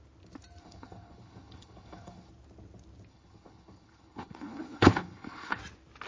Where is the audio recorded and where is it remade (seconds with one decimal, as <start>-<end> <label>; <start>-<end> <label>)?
0.0-0.6 recorded; 0.6-2.3 remade; 2.3-3.1 recorded; 3.1-5.6 remade; 5.6-6.1 recorded